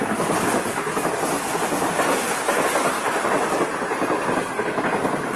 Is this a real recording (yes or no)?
yes